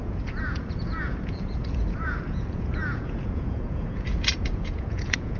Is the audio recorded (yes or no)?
no